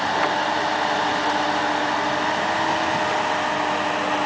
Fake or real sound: real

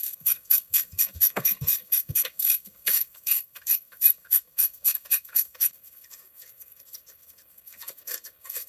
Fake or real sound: fake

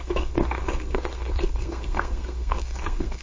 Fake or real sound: fake